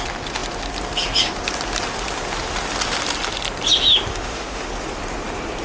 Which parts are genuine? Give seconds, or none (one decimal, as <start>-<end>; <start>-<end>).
0.0-4.1; 4.7-5.6